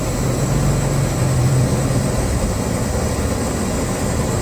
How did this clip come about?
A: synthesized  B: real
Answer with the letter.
A